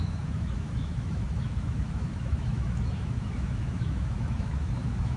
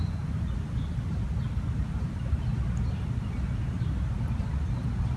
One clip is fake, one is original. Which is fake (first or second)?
first